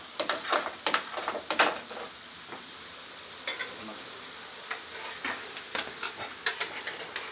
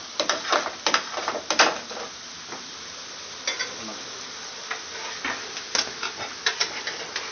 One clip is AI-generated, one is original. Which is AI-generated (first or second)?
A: first